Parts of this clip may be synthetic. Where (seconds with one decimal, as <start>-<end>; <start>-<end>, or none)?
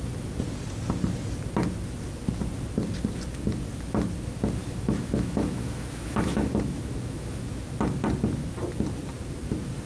4.6-7.7